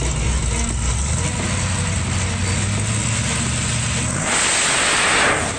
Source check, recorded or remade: recorded